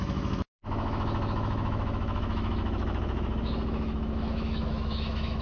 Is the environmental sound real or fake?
fake